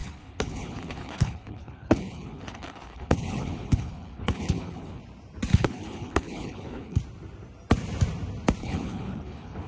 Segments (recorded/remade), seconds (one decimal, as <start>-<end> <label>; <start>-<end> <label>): 0.0-5.0 remade; 5.0-5.5 recorded; 5.5-7.0 remade; 7.0-8.6 recorded; 8.6-9.7 remade